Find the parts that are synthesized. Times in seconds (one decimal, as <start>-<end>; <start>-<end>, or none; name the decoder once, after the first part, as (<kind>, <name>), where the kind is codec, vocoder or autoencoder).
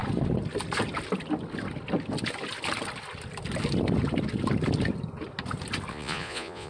5.9-6.7 (vocoder, Vocos)